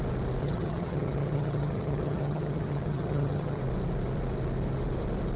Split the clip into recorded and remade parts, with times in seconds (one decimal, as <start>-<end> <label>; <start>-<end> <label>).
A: 0.0-0.4 recorded; 0.4-3.6 remade; 3.6-5.4 recorded